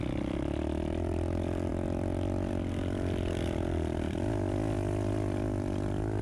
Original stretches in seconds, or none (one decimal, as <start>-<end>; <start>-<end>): 0.0-6.2